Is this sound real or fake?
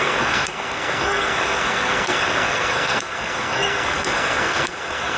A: fake